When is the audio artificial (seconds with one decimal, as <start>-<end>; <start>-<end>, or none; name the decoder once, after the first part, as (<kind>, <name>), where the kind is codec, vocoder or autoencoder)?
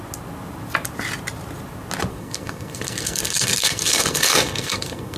2.1-5.2 (codec, SNAC)